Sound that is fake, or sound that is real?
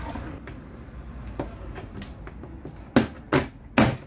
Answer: real